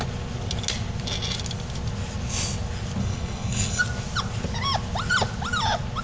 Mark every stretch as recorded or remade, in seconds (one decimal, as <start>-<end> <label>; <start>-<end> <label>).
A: 0.0-3.0 recorded; 3.0-3.8 remade; 3.8-6.0 recorded